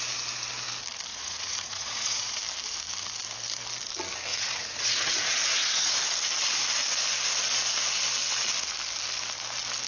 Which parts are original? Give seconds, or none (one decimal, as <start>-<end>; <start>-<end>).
0.0-1.1; 2.4-4.3; 6.0-9.9